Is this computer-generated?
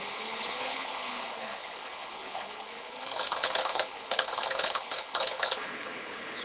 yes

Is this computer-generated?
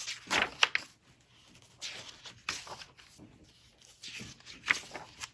no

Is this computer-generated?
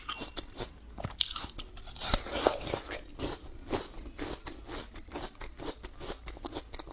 no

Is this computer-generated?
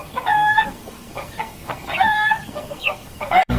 yes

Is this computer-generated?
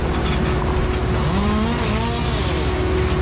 no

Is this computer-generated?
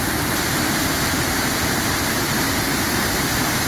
yes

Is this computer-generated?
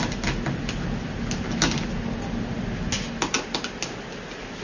no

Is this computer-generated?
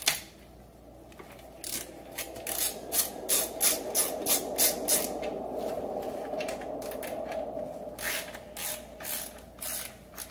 no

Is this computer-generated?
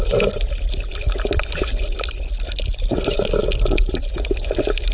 no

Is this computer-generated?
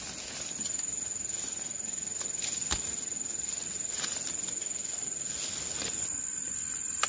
no